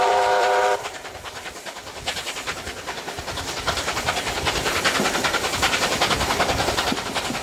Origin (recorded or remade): remade